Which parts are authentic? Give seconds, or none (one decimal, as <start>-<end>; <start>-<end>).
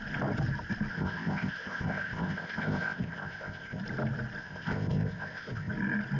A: 0.0-0.9; 3.8-4.4; 5.7-6.2